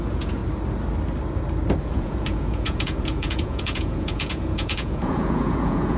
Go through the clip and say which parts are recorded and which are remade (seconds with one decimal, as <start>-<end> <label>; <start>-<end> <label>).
0.0-0.4 remade; 0.4-1.8 recorded; 1.8-6.0 remade